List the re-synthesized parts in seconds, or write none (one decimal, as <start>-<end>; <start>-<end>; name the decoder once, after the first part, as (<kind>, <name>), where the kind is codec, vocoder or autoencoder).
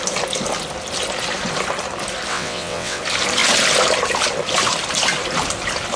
2.3-3.0 (vocoder, WaveNeXt)